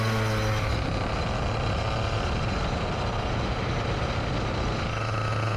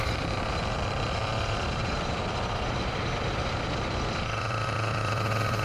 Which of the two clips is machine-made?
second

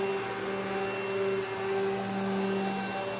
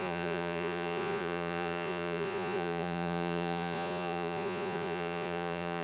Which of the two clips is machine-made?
second